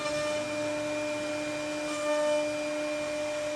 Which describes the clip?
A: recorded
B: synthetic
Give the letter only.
A